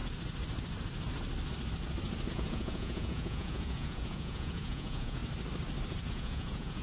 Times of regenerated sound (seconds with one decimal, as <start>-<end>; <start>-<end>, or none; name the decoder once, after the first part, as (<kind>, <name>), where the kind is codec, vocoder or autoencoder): 2.3-5.2 (vocoder, Vocos); 6.1-6.8